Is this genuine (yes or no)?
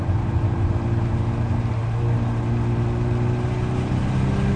yes